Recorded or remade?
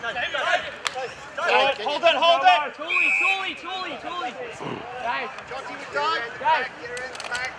recorded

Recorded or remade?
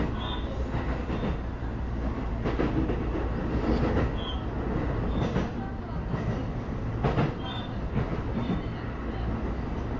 recorded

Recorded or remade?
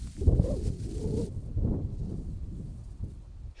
recorded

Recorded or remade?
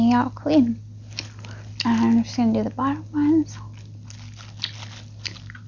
recorded